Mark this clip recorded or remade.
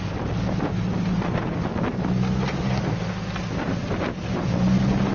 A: recorded